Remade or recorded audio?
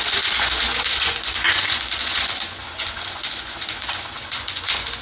remade